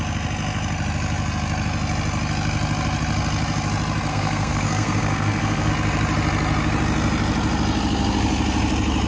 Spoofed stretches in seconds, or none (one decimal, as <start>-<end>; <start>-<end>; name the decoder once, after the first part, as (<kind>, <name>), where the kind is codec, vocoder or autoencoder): 4.1-5.7 (codec, SNAC)